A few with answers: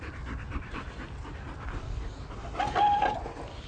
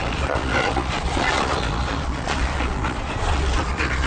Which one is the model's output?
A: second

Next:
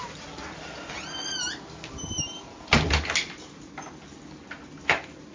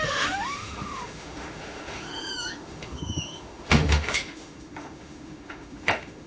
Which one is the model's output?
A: second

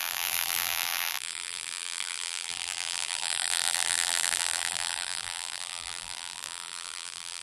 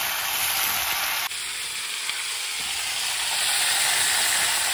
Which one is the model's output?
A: first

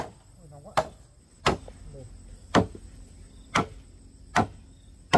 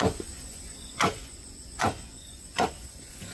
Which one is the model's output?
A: second